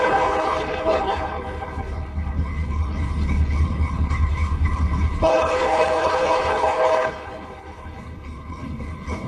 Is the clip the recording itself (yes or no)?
no